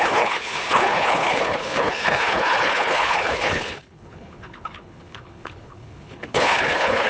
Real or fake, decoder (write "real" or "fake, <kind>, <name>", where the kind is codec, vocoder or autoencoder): fake, codec, HILCodec